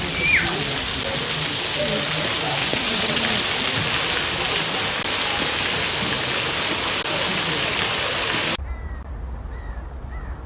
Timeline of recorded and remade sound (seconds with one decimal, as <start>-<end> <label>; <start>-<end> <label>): 0.0-2.6 recorded; 2.6-3.2 remade; 3.2-10.5 recorded